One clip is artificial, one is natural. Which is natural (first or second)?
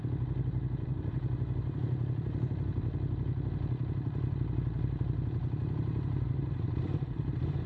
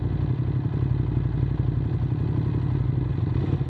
second